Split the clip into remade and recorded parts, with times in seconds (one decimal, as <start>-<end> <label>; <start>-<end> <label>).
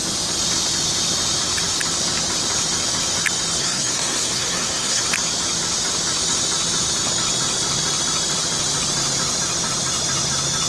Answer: 0.0-3.6 recorded; 3.6-5.0 remade; 5.0-10.7 recorded